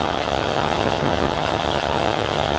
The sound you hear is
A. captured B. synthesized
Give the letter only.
B